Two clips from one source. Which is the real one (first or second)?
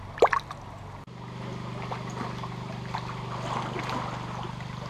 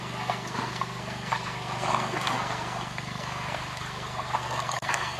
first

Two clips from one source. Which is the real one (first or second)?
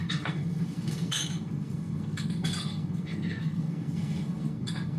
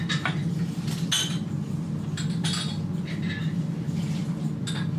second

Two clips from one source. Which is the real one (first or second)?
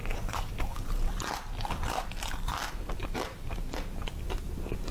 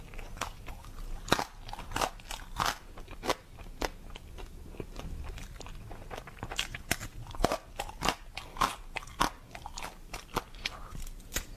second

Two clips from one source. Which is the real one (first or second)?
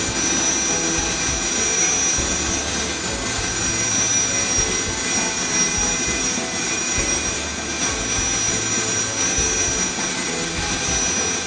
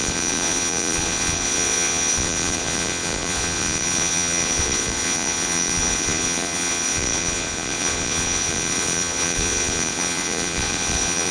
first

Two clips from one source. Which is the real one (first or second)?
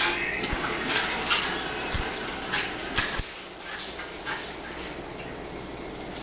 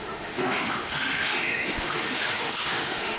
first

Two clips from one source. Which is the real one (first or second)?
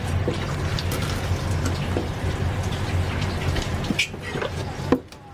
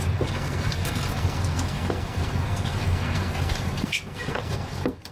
first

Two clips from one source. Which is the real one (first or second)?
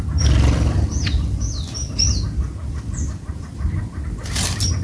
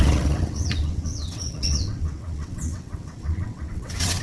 first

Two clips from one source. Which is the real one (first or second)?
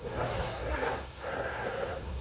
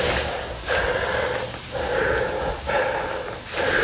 second